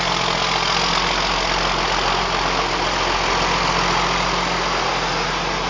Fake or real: real